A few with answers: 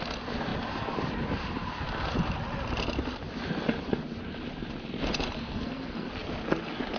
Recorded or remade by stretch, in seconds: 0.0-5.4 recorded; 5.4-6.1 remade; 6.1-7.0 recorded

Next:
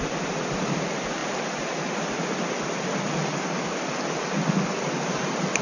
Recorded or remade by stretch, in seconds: 0.0-5.6 recorded

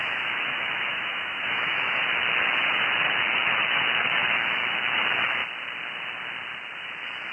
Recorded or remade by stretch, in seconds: 0.0-5.4 remade; 5.4-6.7 recorded; 6.7-7.3 remade